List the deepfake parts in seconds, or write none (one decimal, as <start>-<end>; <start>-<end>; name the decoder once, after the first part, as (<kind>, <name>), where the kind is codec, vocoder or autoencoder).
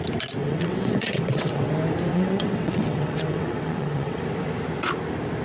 0.4-1.7 (vocoder, WaveNeXt); 2.1-4.2